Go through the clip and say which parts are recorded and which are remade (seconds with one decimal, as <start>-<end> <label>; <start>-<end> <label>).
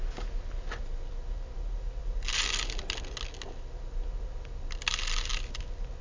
0.0-6.0 recorded